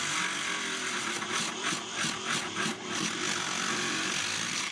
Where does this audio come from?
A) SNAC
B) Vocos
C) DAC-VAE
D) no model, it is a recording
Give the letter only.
D